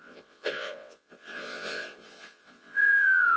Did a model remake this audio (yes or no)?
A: yes